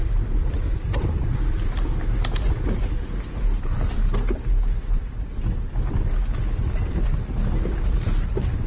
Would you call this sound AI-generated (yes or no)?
no